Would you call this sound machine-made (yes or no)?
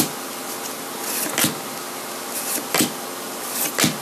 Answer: no